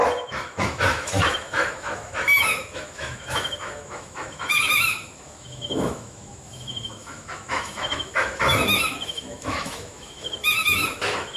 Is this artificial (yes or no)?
yes